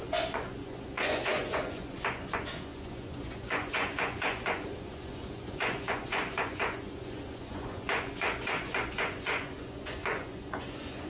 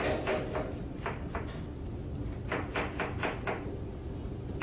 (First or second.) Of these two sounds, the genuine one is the second